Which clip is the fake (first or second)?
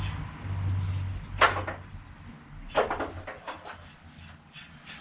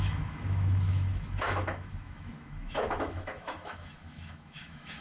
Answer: second